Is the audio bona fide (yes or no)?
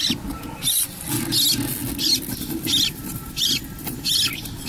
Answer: yes